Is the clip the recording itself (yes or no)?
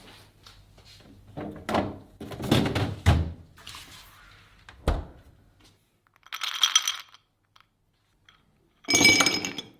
yes